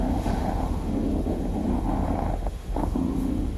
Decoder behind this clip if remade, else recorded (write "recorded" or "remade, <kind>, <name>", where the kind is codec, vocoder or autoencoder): remade, autoencoder, DAC-VAE